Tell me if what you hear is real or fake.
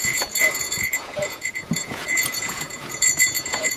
fake